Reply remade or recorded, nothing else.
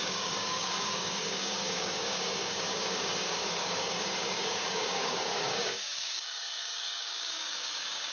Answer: remade